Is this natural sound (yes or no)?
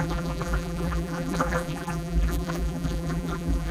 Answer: no